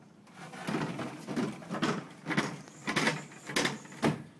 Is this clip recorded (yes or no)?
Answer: yes